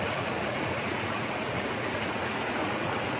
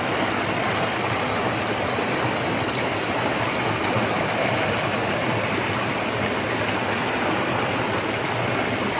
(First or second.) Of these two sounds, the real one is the second